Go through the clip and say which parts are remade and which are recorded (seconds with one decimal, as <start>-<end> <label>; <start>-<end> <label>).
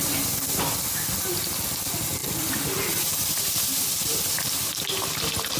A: 0.0-5.6 recorded